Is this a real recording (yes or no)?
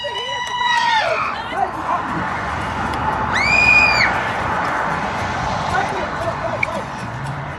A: no